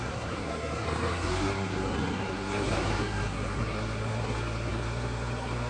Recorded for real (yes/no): no